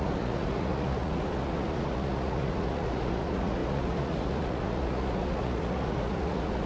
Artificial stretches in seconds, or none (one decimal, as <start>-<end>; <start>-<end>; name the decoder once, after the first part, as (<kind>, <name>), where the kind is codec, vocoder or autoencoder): 0.0-6.7 (vocoder, Vocos)